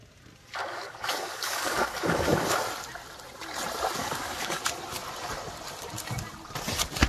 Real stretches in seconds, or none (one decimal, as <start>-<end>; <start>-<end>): 0.0-0.6; 2.5-4.0; 4.6-7.1